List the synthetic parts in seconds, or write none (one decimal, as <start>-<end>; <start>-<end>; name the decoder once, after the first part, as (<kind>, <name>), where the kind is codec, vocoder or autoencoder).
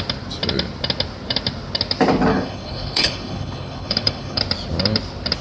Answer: 2.3-4.4 (codec, HILCodec)